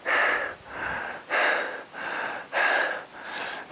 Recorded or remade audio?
remade